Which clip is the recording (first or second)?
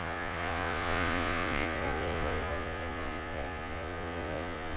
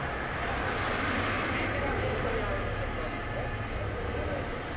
second